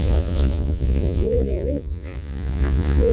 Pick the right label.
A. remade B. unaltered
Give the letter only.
A